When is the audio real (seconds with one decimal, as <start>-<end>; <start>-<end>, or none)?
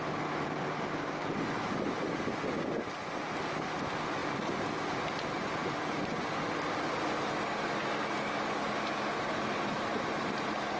0.0-10.8